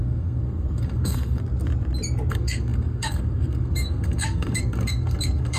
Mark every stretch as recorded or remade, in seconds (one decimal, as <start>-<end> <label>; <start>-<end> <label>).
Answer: 0.0-1.4 remade; 1.4-2.3 recorded; 2.3-5.6 remade